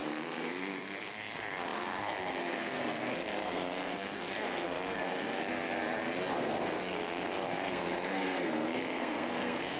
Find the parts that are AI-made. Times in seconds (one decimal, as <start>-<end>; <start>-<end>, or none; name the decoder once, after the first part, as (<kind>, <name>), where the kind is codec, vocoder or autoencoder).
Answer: 0.0-5.5 (codec, SNAC); 6.4-9.8